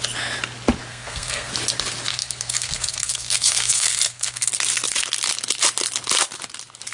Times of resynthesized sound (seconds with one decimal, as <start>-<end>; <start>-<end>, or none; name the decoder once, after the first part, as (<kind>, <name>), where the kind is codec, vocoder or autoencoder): 0.9-1.5 (codec, SNAC); 2.1-4.5